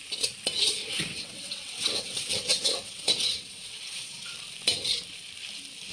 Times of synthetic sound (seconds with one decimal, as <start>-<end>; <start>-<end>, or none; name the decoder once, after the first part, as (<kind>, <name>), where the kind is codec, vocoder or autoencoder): 0.8-4.3 (vocoder, WaveNeXt)